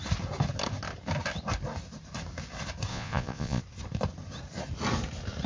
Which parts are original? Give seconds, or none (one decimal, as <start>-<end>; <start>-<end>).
0.0-2.9; 3.6-5.5